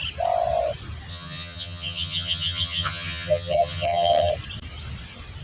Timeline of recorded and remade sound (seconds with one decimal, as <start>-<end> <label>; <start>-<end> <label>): 0.0-1.1 recorded; 1.1-4.3 remade; 4.3-5.4 recorded